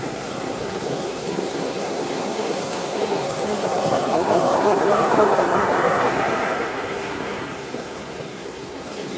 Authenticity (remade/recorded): remade